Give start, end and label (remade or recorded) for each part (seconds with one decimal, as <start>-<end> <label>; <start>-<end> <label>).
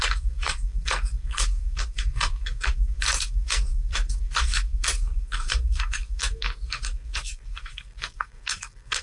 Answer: 0.0-9.0 remade